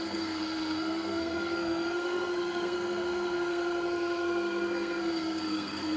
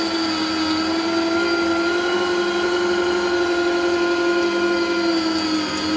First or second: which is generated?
first